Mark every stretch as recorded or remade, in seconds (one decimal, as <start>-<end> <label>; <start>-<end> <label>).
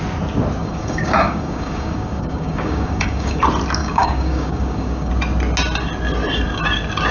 0.0-0.6 recorded; 0.6-3.4 remade; 3.4-3.8 recorded; 3.8-5.1 remade; 5.1-7.1 recorded